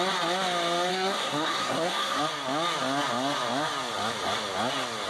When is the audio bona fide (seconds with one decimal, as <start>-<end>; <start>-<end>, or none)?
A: 0.0-0.9; 2.2-5.1